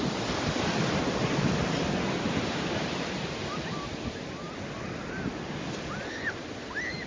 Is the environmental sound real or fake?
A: real